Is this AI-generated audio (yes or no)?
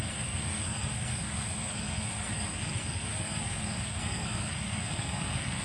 yes